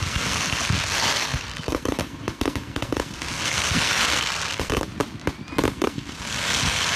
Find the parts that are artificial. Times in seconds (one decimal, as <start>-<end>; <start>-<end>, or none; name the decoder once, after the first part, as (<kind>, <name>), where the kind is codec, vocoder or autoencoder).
0.0-4.9 (codec, SNAC); 5.7-7.0